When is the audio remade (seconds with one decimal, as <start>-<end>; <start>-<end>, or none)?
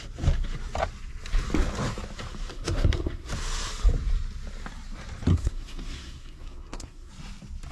2.5-3.3; 5.3-7.1